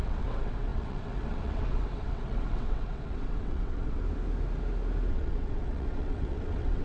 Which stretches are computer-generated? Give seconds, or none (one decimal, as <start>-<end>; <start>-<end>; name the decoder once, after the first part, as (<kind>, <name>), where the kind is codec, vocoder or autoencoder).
0.0-4.0 (vocoder, WaveNeXt); 5.1-6.8